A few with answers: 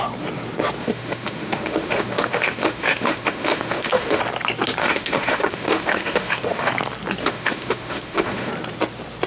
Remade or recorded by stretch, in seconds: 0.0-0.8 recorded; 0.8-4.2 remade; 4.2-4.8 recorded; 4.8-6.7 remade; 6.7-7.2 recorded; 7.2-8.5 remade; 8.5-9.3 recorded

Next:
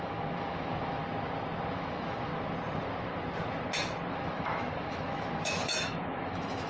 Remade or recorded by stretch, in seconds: 0.0-1.0 remade; 1.0-1.7 recorded; 1.7-2.3 remade; 2.3-4.1 recorded; 4.1-6.7 remade